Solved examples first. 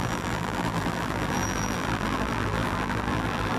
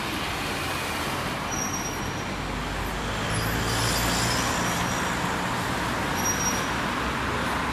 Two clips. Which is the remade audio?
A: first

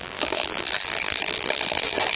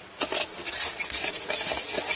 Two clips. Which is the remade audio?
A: first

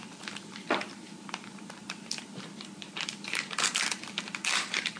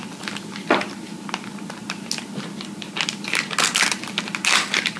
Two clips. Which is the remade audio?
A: first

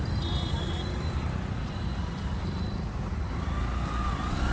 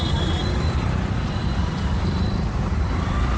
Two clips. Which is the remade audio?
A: second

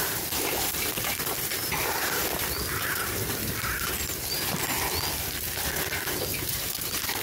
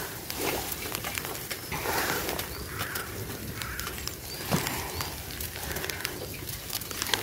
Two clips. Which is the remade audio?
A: second